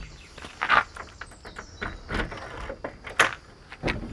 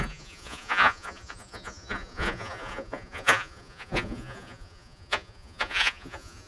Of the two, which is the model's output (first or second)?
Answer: second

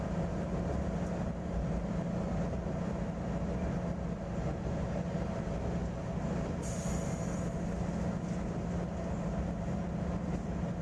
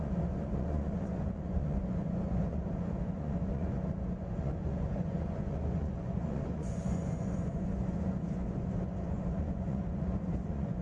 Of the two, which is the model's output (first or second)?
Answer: second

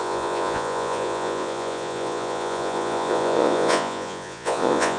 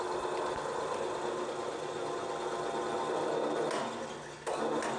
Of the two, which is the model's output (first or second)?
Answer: first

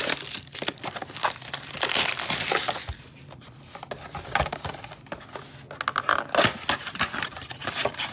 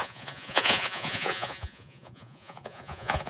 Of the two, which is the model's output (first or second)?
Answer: second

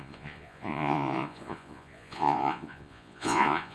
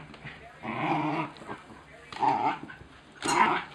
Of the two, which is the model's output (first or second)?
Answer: first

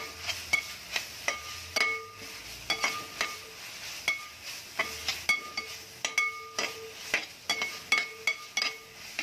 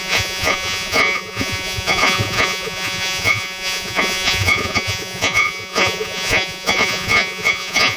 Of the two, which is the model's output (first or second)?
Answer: second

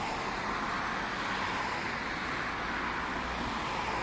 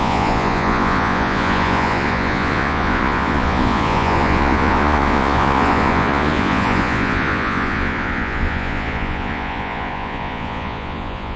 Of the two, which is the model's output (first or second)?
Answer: second